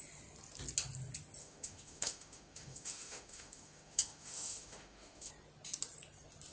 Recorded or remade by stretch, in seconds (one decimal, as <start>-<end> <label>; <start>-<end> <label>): 0.0-1.4 recorded; 1.4-5.3 remade; 5.3-6.5 recorded